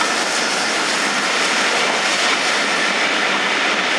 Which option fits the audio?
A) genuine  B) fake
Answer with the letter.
A